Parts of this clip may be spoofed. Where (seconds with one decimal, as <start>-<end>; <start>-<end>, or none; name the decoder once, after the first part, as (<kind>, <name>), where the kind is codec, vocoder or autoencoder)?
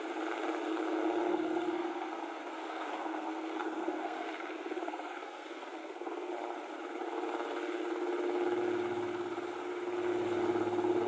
1.3-6.3 (codec, SNAC)